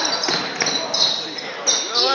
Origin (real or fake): real